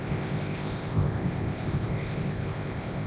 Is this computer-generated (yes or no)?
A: yes